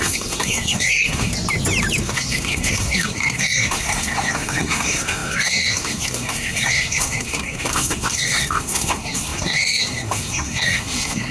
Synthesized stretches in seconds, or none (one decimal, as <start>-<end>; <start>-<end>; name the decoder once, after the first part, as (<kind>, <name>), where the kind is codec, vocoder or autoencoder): 0.0-1.3 (codec, SNAC); 2.0-11.3